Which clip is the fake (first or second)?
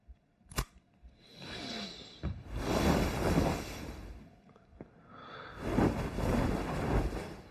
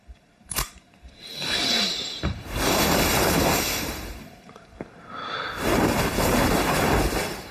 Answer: second